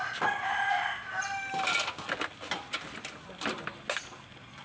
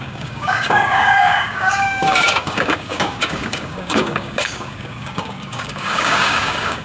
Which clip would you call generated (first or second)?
second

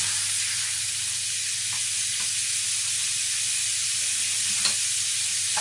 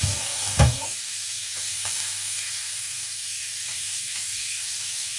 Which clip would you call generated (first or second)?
second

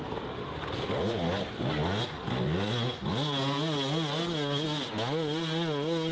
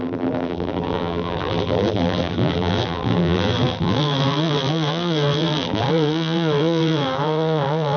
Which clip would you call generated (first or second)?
second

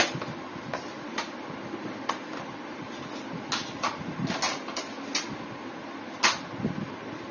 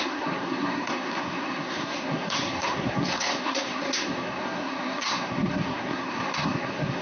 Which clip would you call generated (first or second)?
second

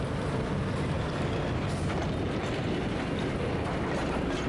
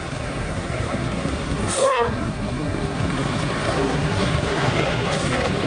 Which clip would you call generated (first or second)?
second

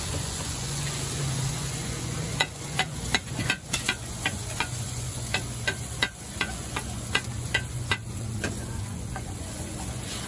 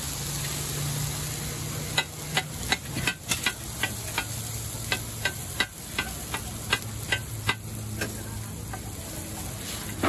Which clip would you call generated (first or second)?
first